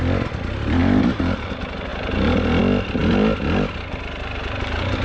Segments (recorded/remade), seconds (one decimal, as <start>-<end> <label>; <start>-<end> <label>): 0.0-0.8 recorded; 0.8-1.5 remade; 1.5-5.0 recorded